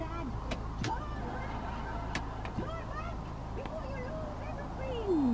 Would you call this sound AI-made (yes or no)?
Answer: no